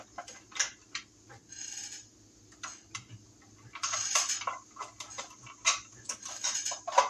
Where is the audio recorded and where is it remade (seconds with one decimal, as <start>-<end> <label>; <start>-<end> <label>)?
0.0-7.1 recorded